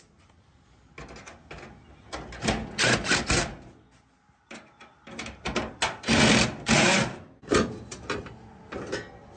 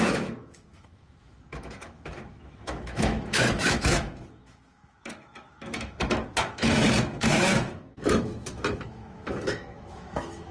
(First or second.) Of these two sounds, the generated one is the second